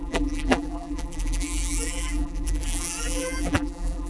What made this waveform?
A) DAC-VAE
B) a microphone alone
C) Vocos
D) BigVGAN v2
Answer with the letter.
D